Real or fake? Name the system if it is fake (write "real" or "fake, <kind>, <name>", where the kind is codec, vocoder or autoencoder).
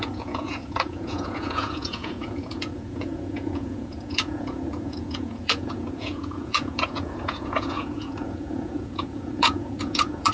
fake, vocoder, Vocos